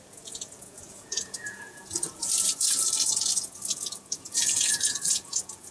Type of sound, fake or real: fake